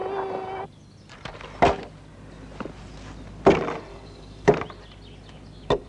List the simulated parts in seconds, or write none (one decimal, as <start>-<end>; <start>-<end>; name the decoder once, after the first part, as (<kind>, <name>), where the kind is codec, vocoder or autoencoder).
3.9-4.5 (codec, DAC)